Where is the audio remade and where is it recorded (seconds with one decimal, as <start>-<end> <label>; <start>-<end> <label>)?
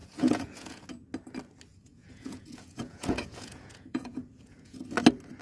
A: 0.0-0.9 remade; 0.9-1.7 recorded; 1.7-4.8 remade; 4.8-5.4 recorded